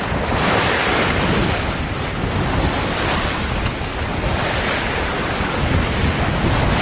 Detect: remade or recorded recorded